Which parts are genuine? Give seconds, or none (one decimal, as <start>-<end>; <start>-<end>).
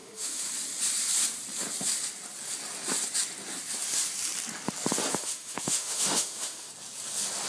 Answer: 0.5-5.1; 6.7-7.5